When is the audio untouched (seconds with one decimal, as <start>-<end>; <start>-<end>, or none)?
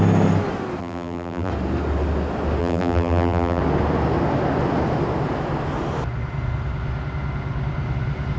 0.0-0.8; 1.5-2.6; 3.6-8.4